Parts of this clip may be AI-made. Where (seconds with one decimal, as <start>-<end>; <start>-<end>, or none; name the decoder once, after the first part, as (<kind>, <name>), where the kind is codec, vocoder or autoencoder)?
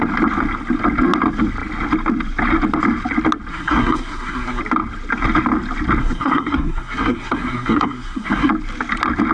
3.5-4.6 (codec, SNAC); 6.0-8.5